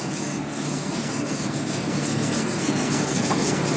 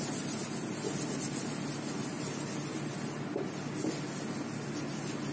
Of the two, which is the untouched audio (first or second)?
second